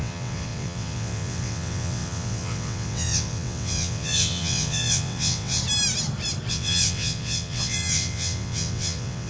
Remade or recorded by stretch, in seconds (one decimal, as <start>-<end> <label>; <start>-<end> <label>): 0.0-5.6 remade; 5.6-6.5 recorded; 6.5-9.3 remade